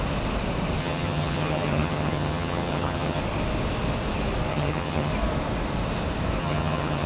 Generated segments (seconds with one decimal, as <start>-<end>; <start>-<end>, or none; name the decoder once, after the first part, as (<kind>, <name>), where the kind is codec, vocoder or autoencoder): 0.8-3.2 (vocoder, HiFi-GAN); 4.5-5.1; 6.4-7.1